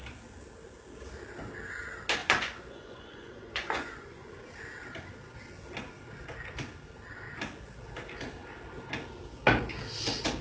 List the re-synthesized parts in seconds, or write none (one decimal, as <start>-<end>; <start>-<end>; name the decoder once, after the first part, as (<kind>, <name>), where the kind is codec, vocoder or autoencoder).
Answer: 2.2-4.3 (vocoder, Vocos)